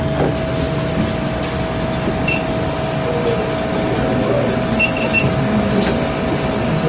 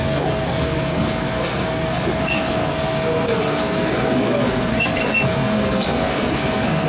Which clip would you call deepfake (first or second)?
second